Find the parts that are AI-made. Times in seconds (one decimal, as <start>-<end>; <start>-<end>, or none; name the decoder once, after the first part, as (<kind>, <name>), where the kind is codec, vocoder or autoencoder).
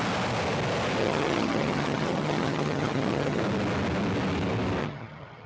1.0-3.4 (vocoder, HiFi-GAN); 4.8-5.5